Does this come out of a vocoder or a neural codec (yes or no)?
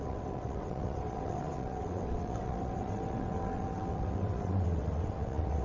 yes